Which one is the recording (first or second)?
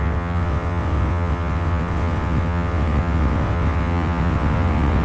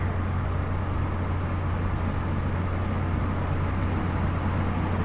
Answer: second